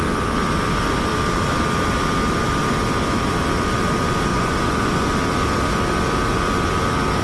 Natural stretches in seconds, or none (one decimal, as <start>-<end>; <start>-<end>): 0.0-4.3; 5.1-7.2